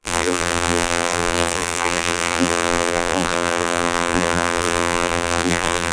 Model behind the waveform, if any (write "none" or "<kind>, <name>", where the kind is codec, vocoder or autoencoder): vocoder, BigVGAN v2